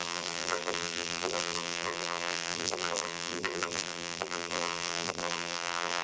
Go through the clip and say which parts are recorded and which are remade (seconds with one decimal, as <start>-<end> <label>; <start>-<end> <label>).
0.0-6.0 remade